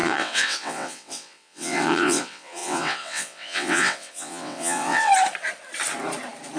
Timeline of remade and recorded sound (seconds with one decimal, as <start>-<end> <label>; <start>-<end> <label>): 0.0-5.1 remade; 5.1-6.6 recorded